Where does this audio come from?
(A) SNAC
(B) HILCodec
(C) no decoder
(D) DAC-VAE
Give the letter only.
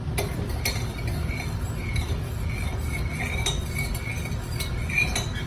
C